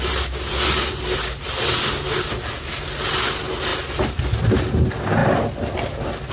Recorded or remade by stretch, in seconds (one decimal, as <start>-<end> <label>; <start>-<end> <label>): 0.0-6.3 recorded